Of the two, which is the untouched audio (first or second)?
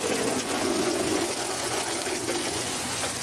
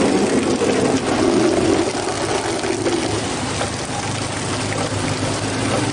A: second